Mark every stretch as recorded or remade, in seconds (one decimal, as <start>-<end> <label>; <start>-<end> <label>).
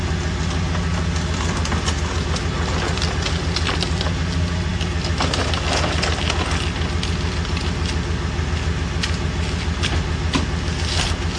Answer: 0.0-11.4 recorded